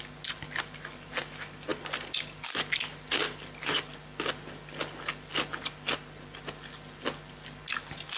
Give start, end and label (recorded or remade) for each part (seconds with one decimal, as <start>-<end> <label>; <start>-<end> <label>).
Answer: 0.0-8.2 recorded